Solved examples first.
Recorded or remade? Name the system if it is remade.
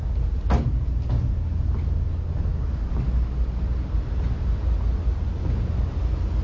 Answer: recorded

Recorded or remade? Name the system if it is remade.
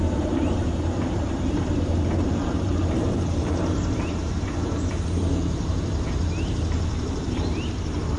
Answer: remade, vocoder, BigVGAN v2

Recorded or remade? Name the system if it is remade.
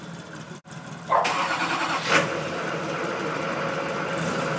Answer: recorded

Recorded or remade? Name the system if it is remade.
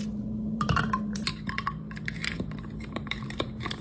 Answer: remade, vocoder, BigVGAN v2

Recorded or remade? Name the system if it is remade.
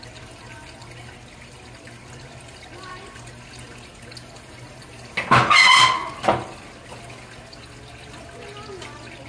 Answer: recorded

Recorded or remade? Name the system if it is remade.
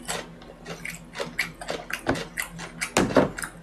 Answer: recorded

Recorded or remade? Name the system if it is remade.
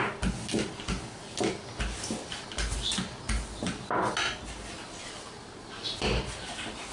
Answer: recorded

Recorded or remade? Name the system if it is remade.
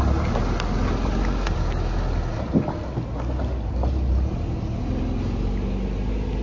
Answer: recorded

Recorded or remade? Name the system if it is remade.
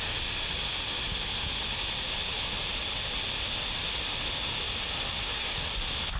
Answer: recorded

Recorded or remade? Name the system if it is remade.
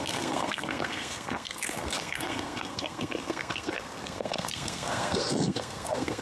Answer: remade, codec, SNAC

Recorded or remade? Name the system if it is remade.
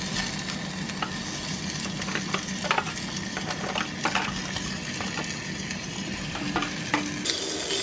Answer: recorded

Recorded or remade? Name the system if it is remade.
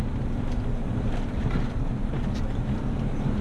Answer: remade, vocoder, BigVGAN v2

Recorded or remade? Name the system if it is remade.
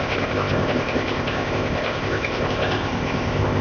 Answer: remade, codec, ZipCodec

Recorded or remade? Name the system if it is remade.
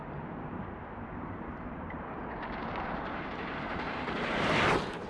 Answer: remade, vocoder, BigVGAN v2